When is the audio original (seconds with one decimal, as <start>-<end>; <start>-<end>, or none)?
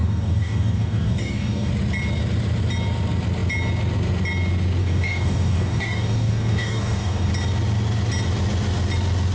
1.7-4.8; 7.3-9.3